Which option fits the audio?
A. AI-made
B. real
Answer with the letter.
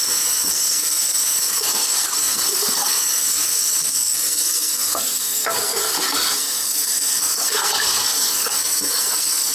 A